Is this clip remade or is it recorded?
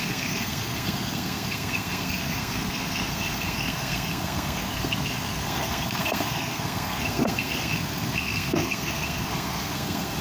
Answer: remade